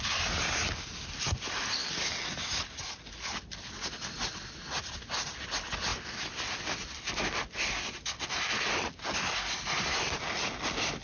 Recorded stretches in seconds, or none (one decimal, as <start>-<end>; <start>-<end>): 0.0-11.0

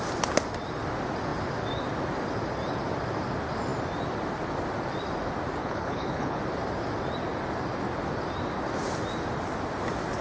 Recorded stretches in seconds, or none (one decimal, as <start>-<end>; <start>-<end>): 0.0-5.6; 6.4-10.2

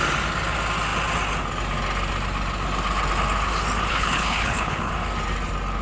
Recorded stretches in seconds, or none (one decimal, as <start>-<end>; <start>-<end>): 0.0-3.9; 4.9-5.8